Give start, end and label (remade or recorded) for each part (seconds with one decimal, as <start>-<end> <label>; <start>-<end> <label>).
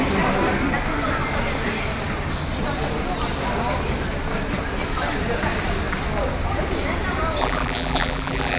0.0-7.4 recorded; 7.4-8.6 remade